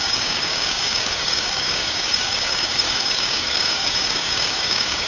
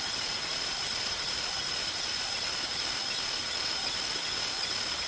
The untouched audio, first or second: second